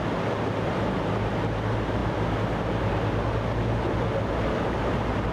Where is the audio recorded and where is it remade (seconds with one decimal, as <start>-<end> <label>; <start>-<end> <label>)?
0.0-5.3 recorded